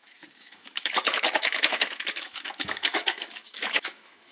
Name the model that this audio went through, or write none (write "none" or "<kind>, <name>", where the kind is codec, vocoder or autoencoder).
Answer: autoencoder, DAC-VAE